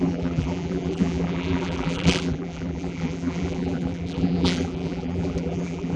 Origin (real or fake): fake